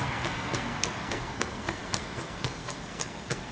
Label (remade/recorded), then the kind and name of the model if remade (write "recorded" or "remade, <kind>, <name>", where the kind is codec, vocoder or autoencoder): remade, codec, SNAC